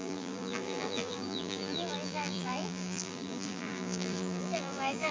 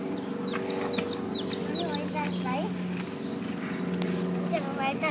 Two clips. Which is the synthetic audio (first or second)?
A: first